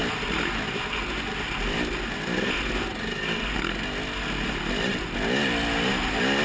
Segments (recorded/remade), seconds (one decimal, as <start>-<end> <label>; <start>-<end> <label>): 0.0-6.4 recorded

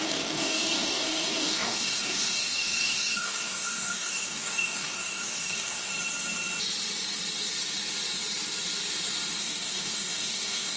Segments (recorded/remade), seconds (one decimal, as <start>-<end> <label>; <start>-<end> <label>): 0.0-5.9 remade; 5.9-9.4 recorded; 9.4-10.8 remade

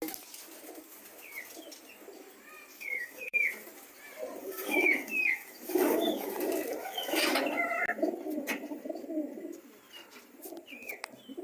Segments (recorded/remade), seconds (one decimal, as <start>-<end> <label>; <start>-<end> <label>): 0.0-2.7 recorded; 2.7-3.5 remade; 3.5-4.4 recorded; 4.4-6.3 remade; 6.3-6.8 recorded; 6.8-7.4 remade; 7.4-11.4 recorded

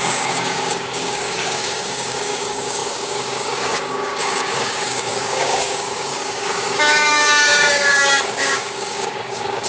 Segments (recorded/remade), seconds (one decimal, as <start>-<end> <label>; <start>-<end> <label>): 0.0-9.7 remade

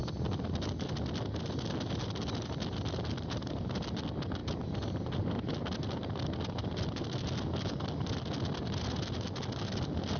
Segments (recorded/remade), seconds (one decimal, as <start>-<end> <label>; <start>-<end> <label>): 0.0-10.2 recorded

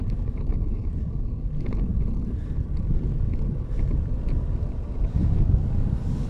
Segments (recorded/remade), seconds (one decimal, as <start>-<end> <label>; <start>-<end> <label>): 0.0-1.9 remade; 1.9-5.1 recorded; 5.1-6.3 remade

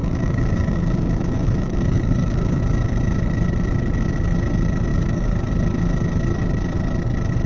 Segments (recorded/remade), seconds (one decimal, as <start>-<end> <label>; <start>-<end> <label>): 0.0-2.6 remade; 2.6-4.9 recorded; 4.9-5.5 remade; 5.5-7.5 recorded

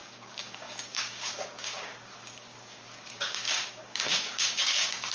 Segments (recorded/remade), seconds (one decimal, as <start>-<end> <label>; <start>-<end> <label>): 0.0-5.1 remade